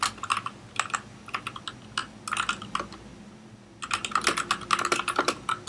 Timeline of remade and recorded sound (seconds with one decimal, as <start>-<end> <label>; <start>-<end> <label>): 0.0-5.7 recorded